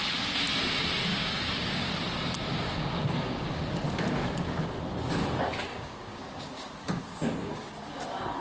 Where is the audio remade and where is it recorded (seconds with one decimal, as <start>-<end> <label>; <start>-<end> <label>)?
0.0-1.1 recorded; 1.1-1.9 remade; 1.9-2.5 recorded; 2.5-3.6 remade; 3.6-5.7 recorded; 5.7-7.7 remade; 7.7-8.4 recorded